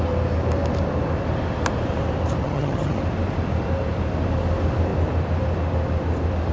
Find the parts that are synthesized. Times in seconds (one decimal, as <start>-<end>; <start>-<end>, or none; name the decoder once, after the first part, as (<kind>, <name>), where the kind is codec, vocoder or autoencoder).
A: 2.4-3.0 (vocoder, HiFi-GAN)